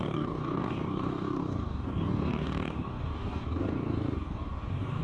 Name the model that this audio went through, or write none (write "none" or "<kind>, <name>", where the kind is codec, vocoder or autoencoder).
codec, DAC